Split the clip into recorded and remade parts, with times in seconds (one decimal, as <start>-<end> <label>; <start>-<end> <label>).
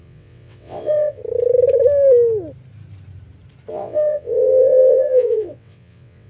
0.0-1.2 remade; 1.2-3.7 recorded; 3.7-6.3 remade